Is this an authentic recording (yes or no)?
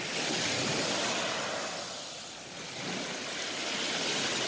yes